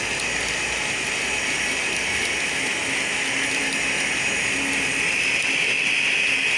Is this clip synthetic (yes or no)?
no